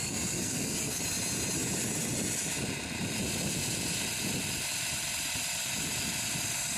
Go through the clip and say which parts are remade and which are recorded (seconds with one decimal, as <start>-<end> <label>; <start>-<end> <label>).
0.0-1.0 remade; 1.0-6.8 recorded